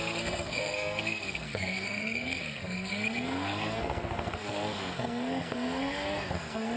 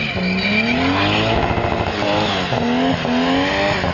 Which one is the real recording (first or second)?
second